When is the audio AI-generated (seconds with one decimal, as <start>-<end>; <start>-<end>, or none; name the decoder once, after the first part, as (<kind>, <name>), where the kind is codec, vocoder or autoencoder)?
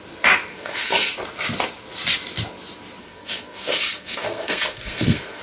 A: 0.5-1.1 (codec, SNAC); 3.0-5.4